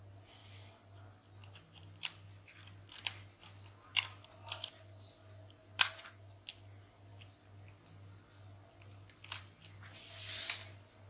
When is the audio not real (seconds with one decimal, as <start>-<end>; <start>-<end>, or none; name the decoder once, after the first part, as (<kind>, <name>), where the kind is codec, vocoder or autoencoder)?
none